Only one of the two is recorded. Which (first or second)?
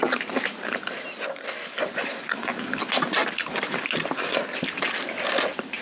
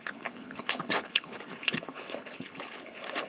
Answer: first